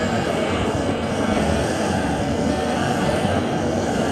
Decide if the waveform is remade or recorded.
remade